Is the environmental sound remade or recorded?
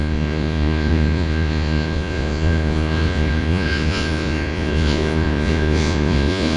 remade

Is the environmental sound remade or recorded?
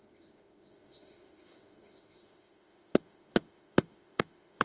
remade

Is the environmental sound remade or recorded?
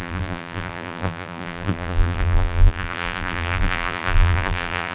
remade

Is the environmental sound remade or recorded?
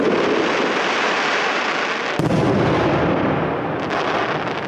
recorded